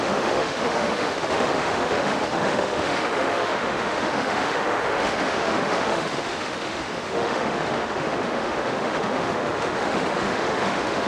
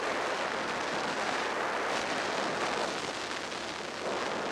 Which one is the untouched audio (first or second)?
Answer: second